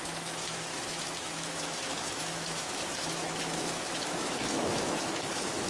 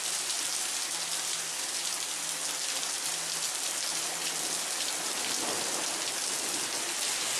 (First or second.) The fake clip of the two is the first